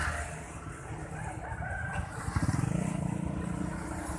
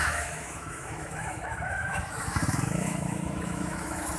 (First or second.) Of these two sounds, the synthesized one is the second